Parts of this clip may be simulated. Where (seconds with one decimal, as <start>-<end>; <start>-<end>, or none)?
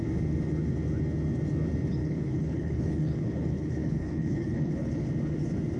2.0-5.1